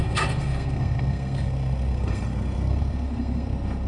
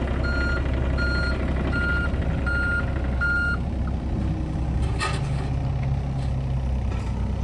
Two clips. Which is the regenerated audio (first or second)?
first